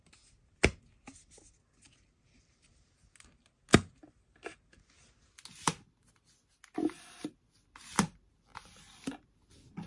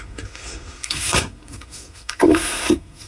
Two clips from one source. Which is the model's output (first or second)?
second